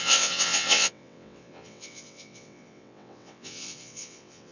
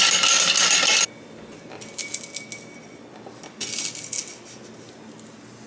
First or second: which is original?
second